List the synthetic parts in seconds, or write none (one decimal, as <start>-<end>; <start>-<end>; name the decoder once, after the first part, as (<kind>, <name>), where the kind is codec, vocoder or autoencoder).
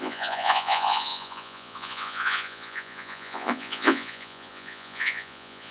0.0-5.7 (vocoder, Vocos)